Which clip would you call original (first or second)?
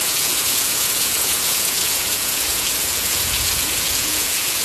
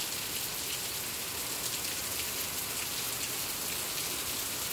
second